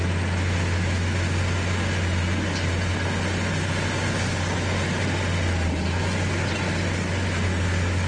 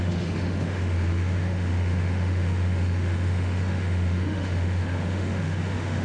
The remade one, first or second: second